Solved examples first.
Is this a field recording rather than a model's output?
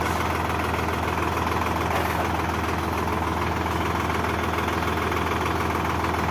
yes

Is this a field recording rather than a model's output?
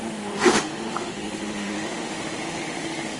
no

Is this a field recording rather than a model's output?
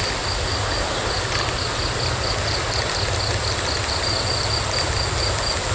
yes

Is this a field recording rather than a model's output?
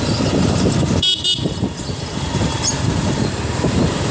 no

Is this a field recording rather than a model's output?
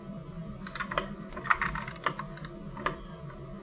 yes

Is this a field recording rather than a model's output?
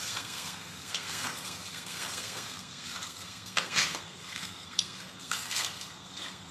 no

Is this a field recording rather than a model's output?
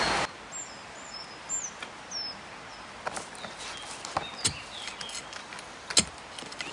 yes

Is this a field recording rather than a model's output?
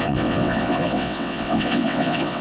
no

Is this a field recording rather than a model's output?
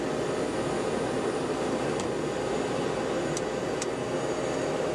yes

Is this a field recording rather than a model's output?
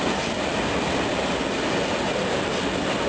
no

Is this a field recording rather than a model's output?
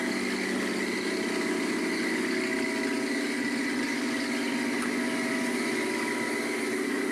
yes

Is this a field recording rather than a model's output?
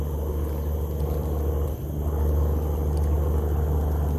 yes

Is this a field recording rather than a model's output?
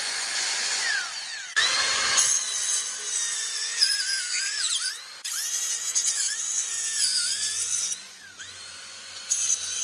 no